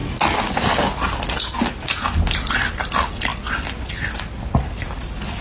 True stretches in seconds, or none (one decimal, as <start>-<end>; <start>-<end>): 1.6-3.3; 4.2-5.4